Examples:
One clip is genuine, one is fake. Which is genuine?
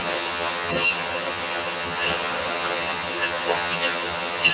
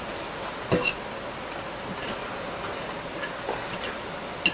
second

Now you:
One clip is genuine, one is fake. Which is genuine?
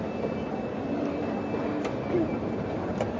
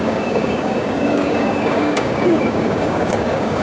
first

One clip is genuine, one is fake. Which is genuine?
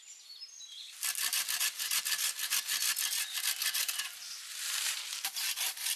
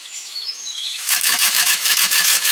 first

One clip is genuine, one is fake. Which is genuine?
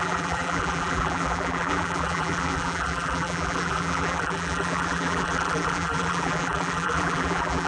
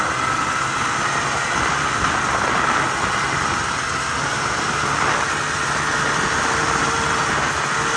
second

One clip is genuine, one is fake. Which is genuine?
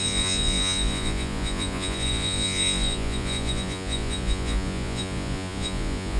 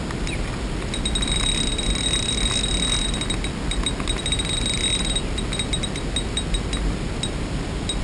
second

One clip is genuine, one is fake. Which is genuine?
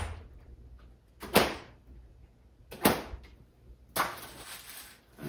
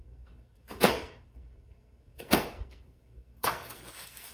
first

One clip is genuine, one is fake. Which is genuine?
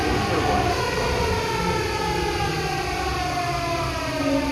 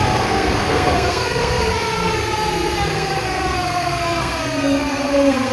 first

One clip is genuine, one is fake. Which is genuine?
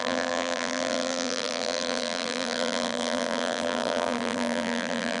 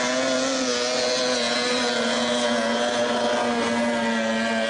second